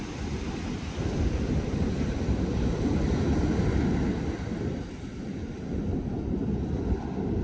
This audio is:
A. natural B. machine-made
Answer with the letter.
A